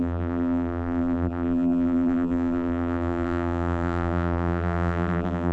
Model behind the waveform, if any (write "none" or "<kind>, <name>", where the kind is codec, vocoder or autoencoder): vocoder, BigVGAN v2